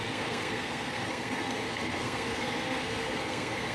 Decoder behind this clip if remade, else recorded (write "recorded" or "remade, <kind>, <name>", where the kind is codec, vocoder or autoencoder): remade, codec, SNAC